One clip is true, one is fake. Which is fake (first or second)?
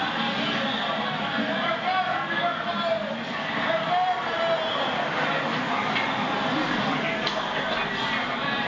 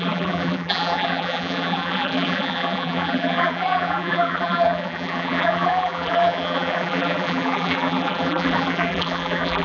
second